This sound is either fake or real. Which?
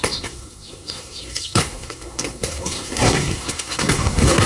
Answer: fake